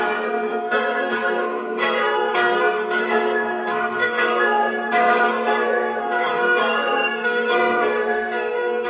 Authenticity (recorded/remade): remade